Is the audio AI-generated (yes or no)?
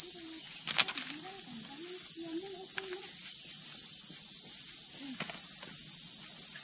no